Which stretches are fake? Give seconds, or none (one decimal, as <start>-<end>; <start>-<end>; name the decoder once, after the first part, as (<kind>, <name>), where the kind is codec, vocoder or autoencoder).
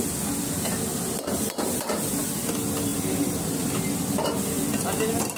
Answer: 0.9-2.5 (vocoder, BigVGAN v2); 2.9-5.4